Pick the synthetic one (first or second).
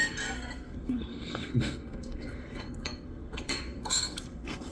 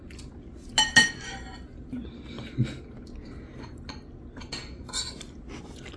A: first